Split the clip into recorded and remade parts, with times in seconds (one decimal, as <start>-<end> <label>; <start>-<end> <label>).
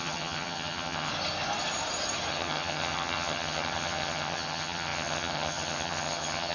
0.0-1.1 remade; 1.1-2.3 recorded; 2.3-6.5 remade